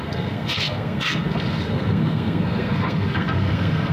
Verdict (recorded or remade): remade